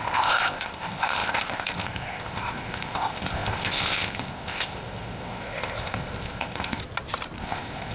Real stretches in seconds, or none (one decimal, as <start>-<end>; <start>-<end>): 6.8-7.4